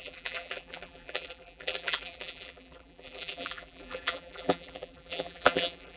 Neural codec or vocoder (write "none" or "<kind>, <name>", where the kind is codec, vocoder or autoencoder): vocoder, BigVGAN v2